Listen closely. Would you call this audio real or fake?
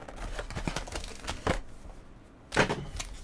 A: real